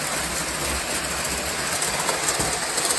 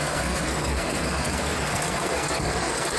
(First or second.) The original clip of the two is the first